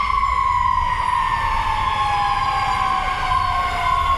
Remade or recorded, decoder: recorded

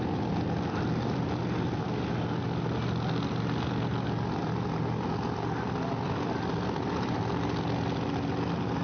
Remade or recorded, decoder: recorded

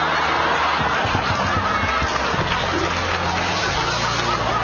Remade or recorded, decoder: recorded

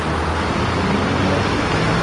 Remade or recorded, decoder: recorded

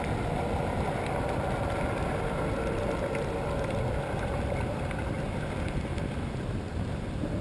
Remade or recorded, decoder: recorded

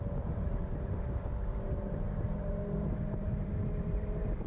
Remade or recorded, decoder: remade, vocoder, BigVGAN v2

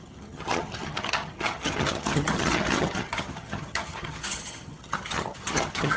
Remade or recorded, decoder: remade, vocoder, HiFi-GAN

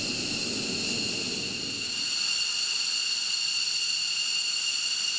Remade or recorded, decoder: recorded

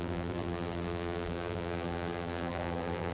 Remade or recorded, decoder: remade, vocoder, BigVGAN v2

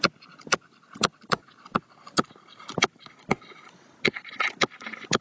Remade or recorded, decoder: recorded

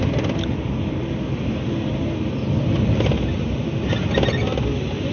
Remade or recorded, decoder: recorded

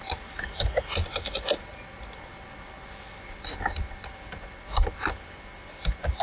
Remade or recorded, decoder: recorded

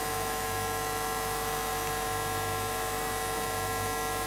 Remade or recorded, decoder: remade, autoencoder, DAC-VAE